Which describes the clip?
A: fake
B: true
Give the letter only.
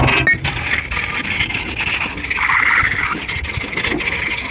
B